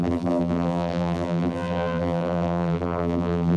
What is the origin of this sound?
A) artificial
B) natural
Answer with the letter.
A